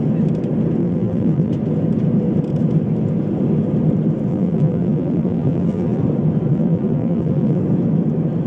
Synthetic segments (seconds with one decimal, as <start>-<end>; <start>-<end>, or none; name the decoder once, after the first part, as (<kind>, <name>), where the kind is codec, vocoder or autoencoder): 0.8-1.5 (vocoder, BigVGAN v2); 4.3-6.0; 6.5-7.6